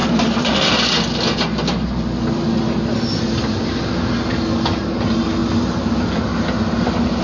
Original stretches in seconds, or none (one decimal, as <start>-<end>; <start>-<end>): 0.0-7.2